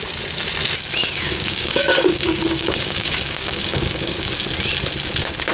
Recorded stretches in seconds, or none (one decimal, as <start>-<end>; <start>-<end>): 0.0-1.0; 4.3-5.5